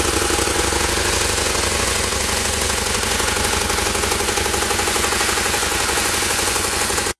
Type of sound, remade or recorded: remade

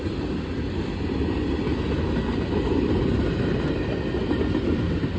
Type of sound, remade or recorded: recorded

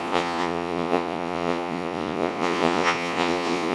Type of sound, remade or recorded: remade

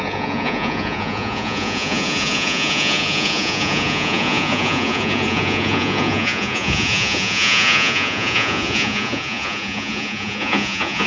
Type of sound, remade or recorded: remade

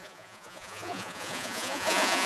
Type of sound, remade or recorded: remade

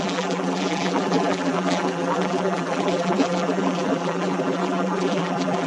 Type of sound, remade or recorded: remade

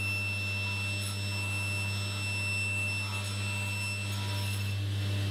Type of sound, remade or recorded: recorded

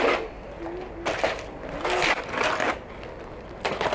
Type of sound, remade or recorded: recorded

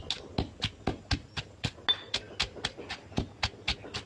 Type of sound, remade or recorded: recorded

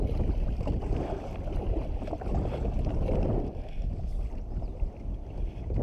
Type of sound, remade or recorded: recorded